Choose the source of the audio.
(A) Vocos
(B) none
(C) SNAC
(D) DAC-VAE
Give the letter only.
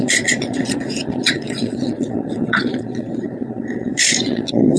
A